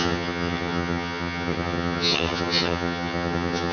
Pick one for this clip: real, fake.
fake